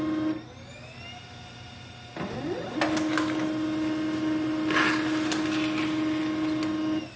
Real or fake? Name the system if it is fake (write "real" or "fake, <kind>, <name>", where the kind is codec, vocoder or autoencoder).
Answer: real